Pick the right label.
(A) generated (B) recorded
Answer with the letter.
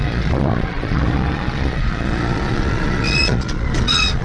A